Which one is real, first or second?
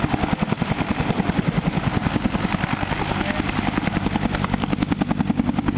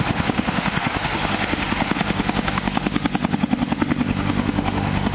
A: first